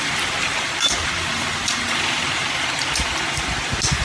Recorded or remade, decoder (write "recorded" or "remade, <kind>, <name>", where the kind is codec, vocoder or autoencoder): recorded